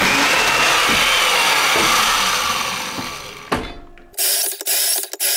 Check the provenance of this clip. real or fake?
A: real